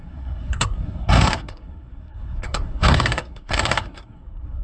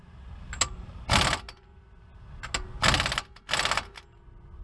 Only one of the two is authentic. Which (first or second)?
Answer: second